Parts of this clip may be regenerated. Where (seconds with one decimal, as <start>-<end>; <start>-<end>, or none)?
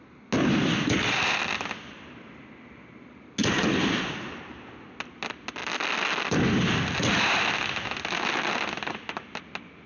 0.4-1.5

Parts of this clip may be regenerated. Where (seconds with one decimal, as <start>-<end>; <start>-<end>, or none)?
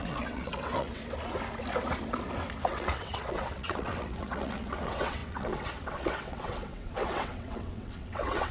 0.0-1.0; 2.6-8.5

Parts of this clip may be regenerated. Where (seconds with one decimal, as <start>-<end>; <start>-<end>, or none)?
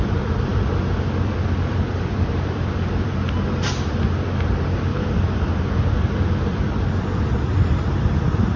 0.0-0.5; 1.0-8.6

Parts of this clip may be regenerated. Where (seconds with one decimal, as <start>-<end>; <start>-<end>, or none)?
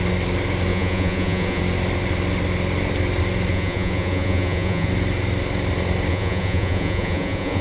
0.7-1.6; 3.5-4.9; 6.1-7.6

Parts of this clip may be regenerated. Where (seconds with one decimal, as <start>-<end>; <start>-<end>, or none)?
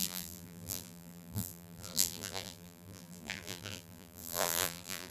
0.0-5.1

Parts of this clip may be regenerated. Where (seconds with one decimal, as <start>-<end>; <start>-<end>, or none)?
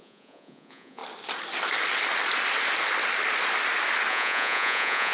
0.0-1.0; 4.1-5.1